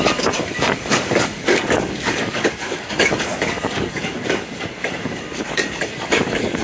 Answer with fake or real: fake